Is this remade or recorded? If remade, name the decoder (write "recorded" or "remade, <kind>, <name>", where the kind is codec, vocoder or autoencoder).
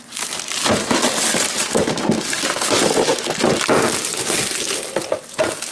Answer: recorded